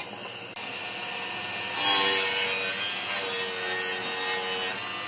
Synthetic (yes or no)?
no